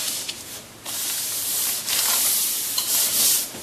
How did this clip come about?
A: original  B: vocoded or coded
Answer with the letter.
B